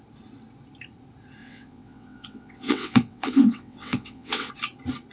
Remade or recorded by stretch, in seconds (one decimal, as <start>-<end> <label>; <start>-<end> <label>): 0.0-1.4 recorded; 1.4-4.5 remade; 4.5-5.1 recorded